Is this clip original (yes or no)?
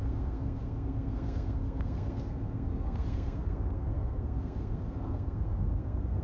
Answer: no